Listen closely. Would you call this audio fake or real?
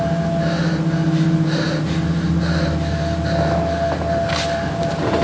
real